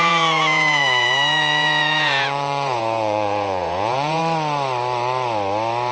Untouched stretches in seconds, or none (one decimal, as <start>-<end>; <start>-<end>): 4.2-5.9